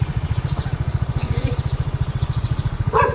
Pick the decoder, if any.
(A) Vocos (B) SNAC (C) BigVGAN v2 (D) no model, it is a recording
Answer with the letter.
A